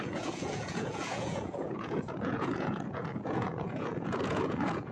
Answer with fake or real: fake